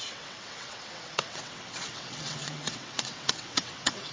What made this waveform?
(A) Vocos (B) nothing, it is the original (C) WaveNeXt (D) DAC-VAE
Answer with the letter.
C